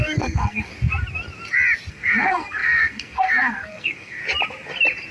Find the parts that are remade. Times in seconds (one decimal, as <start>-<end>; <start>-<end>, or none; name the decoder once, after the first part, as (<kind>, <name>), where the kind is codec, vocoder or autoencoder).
0.0-0.7 (codec, SNAC); 1.9-4.2